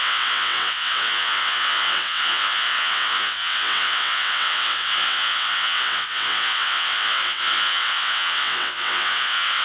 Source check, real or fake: fake